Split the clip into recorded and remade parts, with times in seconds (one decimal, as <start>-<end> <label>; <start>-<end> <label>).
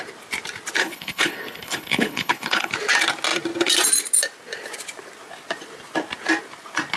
0.0-0.8 recorded; 0.8-2.7 remade; 2.7-7.0 recorded